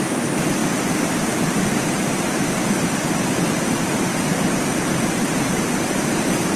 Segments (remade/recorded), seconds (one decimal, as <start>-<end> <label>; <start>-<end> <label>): 0.0-4.1 remade; 4.1-5.1 recorded; 5.1-6.6 remade